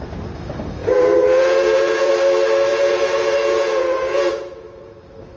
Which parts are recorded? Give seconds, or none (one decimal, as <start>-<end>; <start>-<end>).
0.0-0.8; 2.1-2.7; 4.9-5.4